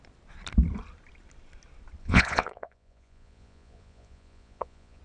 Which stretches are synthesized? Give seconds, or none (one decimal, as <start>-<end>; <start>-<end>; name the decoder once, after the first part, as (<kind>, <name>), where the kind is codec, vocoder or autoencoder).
2.0-5.0 (vocoder, Vocos)